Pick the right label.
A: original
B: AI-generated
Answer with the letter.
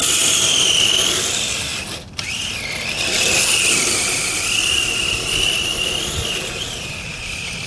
A